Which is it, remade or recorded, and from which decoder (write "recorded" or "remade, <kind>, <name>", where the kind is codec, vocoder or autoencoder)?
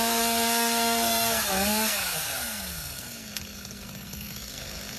remade, codec, SNAC